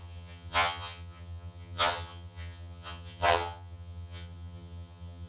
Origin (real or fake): fake